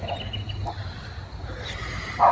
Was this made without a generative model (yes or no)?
yes